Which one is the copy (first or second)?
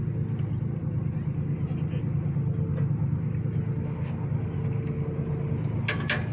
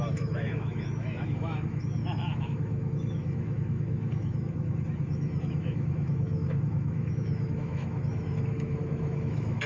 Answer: second